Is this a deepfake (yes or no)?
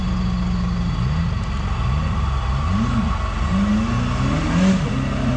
no